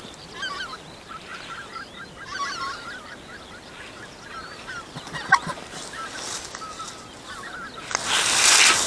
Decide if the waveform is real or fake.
real